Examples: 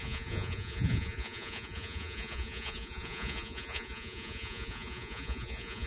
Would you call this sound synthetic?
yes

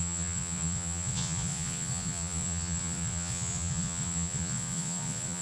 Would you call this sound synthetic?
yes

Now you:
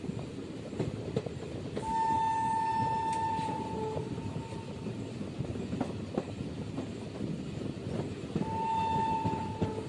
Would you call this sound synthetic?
no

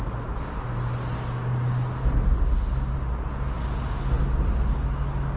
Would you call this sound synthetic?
no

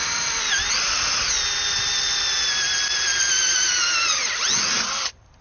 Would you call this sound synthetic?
no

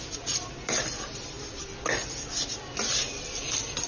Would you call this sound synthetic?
no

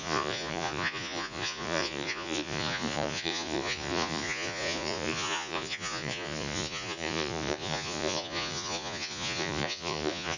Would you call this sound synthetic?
yes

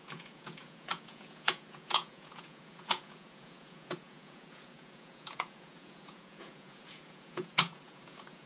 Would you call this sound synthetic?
yes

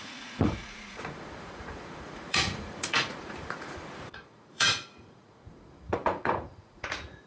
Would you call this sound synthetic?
yes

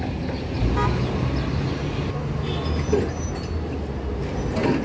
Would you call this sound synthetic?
no